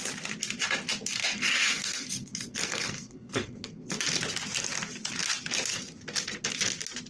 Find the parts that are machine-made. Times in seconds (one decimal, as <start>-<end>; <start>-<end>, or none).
1.2-3.9